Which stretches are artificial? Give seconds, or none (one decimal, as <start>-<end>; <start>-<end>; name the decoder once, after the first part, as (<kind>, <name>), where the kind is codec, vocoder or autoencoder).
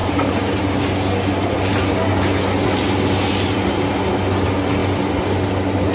0.0-0.6 (vocoder, BigVGAN v2)